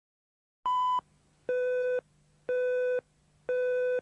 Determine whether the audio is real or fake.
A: real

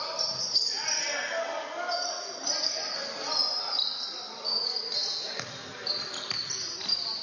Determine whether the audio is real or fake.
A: real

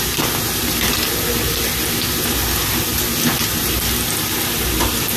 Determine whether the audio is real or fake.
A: real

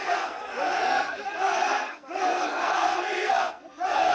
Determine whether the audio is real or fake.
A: fake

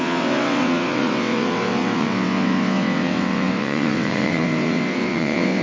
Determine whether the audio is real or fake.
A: fake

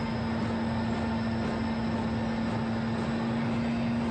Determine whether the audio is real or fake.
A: real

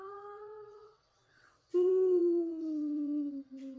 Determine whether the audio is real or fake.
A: fake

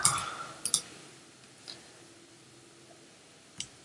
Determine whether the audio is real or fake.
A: real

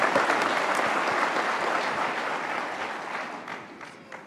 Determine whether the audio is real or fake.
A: real